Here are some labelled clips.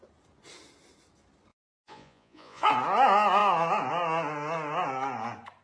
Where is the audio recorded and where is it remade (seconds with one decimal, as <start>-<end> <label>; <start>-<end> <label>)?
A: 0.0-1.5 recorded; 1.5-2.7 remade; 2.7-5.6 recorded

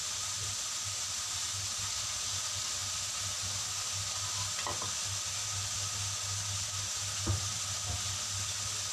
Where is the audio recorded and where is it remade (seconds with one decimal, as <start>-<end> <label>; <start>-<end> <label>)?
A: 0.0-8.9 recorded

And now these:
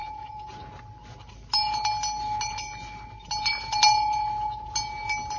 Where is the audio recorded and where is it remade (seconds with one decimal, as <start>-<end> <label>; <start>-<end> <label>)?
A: 0.0-0.6 remade; 0.6-5.4 recorded

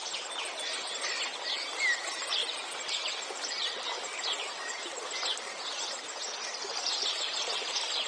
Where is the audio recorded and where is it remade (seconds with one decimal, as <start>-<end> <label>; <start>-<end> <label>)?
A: 0.0-8.1 recorded

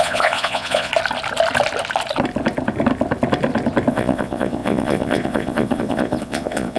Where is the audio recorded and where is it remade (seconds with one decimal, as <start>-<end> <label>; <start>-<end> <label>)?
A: 0.0-0.9 remade; 0.9-3.9 recorded; 3.9-6.8 remade

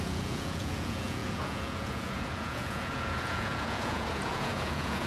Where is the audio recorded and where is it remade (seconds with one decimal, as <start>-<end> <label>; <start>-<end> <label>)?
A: 0.0-5.1 remade